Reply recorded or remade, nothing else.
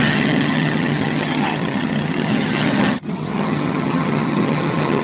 remade